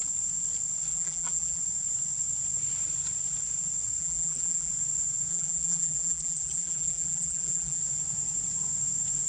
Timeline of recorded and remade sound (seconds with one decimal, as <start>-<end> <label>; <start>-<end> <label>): 0.0-0.9 recorded; 0.9-1.6 remade; 1.6-4.0 recorded; 4.0-4.7 remade; 4.7-5.3 recorded; 5.3-7.8 remade; 7.8-9.3 recorded